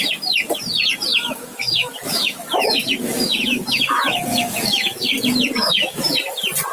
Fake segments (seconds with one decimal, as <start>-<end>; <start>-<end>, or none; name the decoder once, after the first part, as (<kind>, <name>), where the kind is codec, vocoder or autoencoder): 1.1-5.1 (autoencoder, DAC-VAE); 5.6-6.2